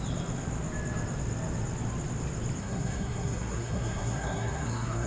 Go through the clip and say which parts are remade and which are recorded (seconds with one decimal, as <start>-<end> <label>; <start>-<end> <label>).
0.0-2.6 recorded; 2.6-5.1 remade